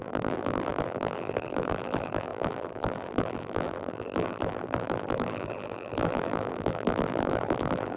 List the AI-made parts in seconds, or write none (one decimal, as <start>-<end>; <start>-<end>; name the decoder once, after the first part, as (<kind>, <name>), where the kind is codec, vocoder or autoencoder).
0.0-8.0 (vocoder, BigVGAN v2)